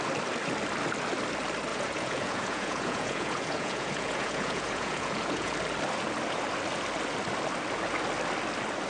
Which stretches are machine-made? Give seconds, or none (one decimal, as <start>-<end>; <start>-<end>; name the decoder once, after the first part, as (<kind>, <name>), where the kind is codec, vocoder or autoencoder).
1.7-5.5 (vocoder, Vocos)